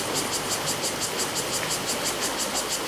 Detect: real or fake real